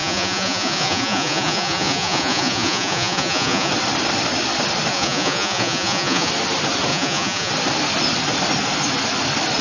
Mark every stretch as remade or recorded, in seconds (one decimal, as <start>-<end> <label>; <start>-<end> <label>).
0.0-3.7 remade; 3.7-4.9 recorded; 4.9-6.3 remade; 6.3-6.9 recorded; 6.9-7.5 remade; 7.5-9.6 recorded